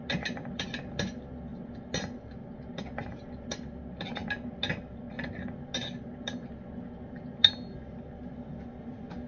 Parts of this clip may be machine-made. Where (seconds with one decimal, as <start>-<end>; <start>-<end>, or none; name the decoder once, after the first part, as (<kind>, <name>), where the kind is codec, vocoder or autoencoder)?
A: none